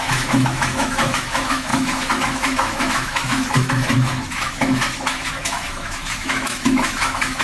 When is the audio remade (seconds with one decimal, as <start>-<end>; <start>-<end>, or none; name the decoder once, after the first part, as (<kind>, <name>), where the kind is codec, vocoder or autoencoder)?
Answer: 0.0-7.4 (autoencoder, DAC-VAE)